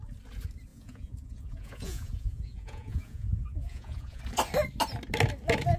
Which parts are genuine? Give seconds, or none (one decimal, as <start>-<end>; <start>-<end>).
0.0-0.7; 4.2-5.8